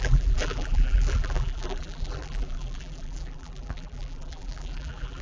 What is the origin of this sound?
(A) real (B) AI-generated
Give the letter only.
B